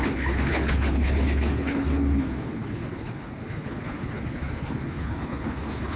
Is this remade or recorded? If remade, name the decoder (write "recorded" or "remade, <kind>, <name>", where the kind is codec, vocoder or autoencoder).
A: remade, codec, HILCodec